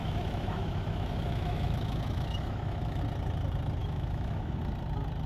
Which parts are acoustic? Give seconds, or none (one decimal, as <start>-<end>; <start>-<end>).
3.0-3.8; 4.6-5.3